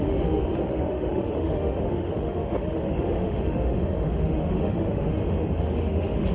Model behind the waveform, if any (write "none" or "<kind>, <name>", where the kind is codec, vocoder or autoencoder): autoencoder, DAC-VAE